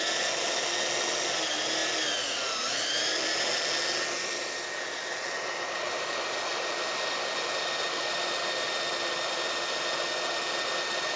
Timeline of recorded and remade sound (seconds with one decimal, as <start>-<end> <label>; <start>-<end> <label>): 0.0-11.2 recorded